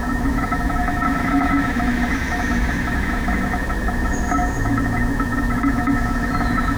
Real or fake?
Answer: fake